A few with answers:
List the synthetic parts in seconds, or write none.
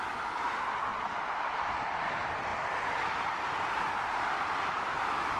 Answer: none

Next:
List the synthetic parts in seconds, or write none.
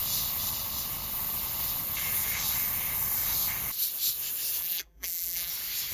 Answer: 4.6-5.5 (vocoder, BigVGAN v2)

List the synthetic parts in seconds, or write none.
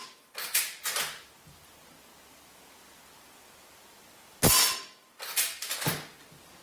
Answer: 0.0-1.3 (vocoder, BigVGAN v2)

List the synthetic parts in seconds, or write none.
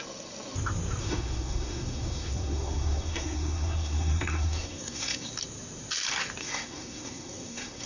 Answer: 1.0-5.3 (codec, SNAC); 6.4-7.9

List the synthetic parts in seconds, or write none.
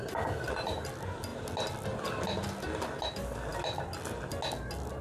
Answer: none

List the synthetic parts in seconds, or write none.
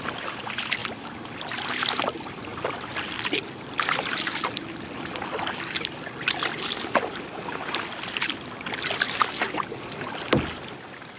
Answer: none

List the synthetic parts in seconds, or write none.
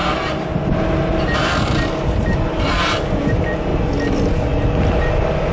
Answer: none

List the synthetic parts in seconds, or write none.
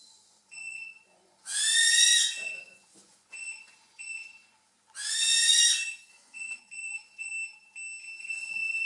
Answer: 0.0-7.3 (vocoder, Vocos); 8.2-8.9